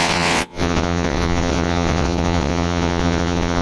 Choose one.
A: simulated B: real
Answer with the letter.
A